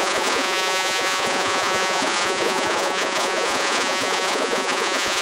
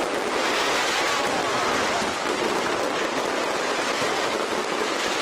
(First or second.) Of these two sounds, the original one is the second